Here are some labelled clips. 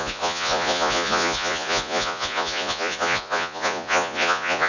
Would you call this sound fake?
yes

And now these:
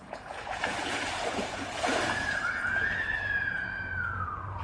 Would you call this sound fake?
yes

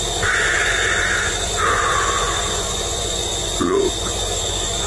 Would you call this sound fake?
yes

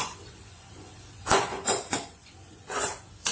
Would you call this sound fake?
yes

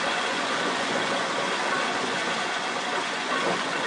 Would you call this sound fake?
yes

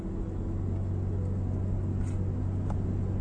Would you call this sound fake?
no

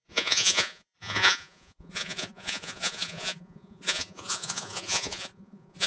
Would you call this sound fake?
yes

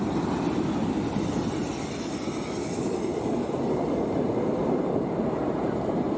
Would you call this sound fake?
no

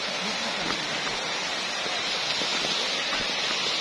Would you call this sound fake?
no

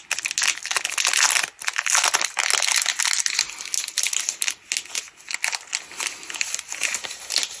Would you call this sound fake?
no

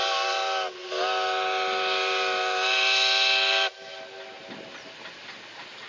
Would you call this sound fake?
no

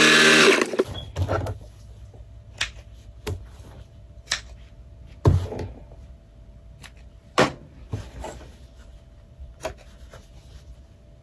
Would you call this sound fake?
no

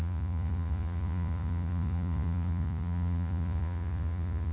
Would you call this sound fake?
yes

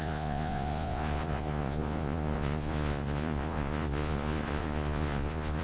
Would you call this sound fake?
yes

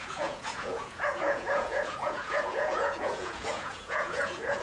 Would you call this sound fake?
yes